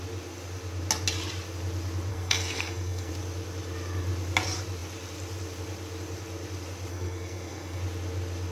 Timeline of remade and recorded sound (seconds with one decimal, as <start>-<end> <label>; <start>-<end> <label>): 0.0-2.1 recorded; 2.1-3.1 remade; 3.1-6.9 recorded; 6.9-7.8 remade; 7.8-8.5 recorded

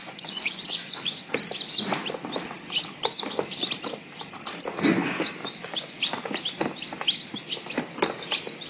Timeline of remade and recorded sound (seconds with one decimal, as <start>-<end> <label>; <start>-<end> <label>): 0.0-1.2 remade; 1.2-5.4 recorded; 5.4-6.0 remade; 6.0-8.7 recorded

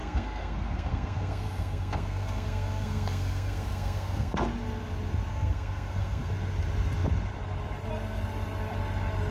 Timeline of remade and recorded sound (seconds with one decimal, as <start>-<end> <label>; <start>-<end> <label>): 0.0-4.4 remade; 4.4-5.3 recorded; 5.3-6.3 remade; 6.3-9.3 recorded

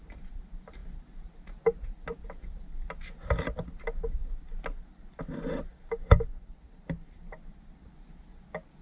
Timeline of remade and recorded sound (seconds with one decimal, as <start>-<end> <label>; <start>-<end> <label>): 0.0-8.8 recorded

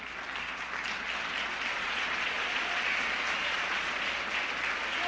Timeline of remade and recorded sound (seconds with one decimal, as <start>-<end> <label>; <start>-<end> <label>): 0.0-1.7 recorded; 1.7-2.8 remade; 2.8-3.4 recorded; 3.4-4.1 remade; 4.1-5.1 recorded

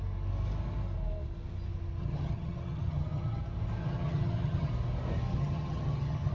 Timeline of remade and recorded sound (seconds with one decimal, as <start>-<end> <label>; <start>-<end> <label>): 0.0-2.0 recorded; 2.0-3.4 remade; 3.4-3.8 recorded; 3.8-4.7 remade; 4.7-5.3 recorded; 5.3-6.3 remade